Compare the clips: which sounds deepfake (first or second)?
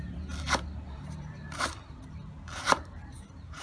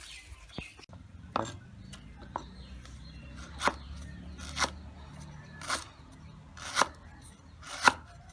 first